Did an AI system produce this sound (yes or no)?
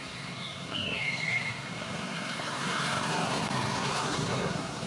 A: yes